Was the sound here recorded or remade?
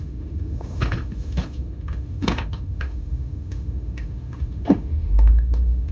remade